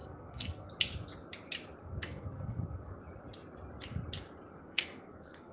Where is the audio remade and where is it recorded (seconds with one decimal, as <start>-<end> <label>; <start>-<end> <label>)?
0.0-0.7 remade; 0.7-1.8 recorded; 1.8-3.0 remade; 3.0-4.6 recorded; 4.6-5.5 remade